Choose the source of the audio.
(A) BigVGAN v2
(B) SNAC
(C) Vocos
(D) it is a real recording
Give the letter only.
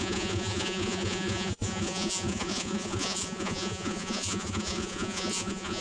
C